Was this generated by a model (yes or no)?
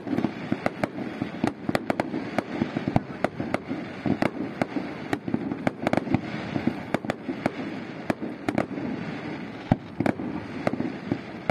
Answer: no